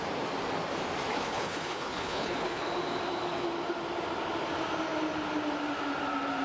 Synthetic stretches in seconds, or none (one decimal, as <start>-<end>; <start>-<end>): 1.1-2.6